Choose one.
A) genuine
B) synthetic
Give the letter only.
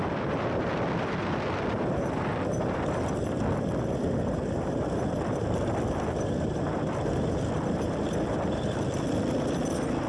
A